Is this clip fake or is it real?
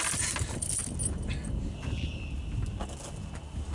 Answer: real